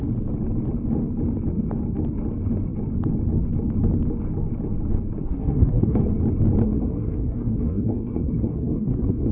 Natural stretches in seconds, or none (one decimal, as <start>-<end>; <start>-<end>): 0.0-5.2; 6.0-6.6